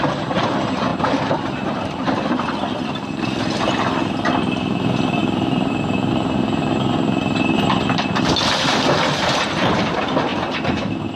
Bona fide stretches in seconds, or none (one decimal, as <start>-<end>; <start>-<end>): 5.2-6.1; 10.3-11.2